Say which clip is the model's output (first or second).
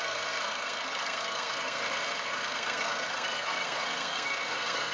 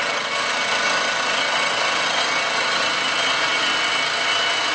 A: first